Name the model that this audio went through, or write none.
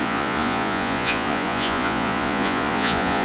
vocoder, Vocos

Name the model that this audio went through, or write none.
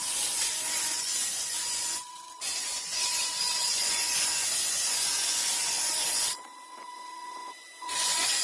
vocoder, Vocos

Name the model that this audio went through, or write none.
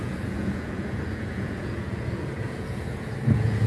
vocoder, Vocos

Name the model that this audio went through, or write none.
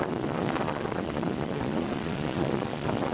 vocoder, Vocos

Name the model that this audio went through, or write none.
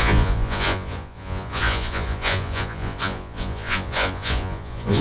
vocoder, Vocos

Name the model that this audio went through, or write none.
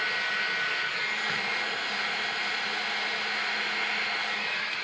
none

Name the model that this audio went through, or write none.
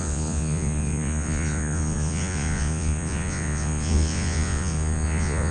vocoder, Vocos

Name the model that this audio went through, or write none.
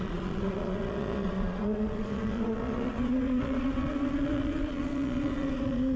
vocoder, Vocos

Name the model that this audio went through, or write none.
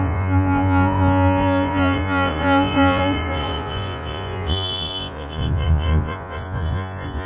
vocoder, Vocos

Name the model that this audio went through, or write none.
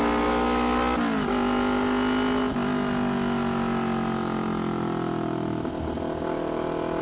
none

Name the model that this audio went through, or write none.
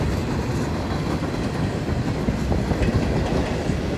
none